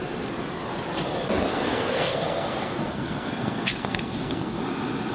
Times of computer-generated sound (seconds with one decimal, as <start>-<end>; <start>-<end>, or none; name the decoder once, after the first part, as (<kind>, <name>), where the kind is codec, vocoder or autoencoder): 1.5-4.6 (codec, SNAC)